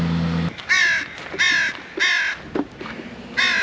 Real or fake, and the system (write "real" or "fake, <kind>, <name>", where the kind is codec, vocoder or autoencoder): real